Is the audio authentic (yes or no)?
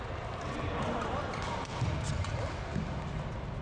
yes